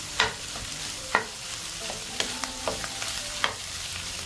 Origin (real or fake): fake